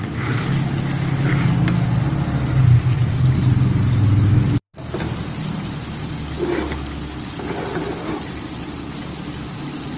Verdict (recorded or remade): recorded